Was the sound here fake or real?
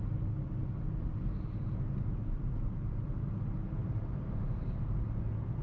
real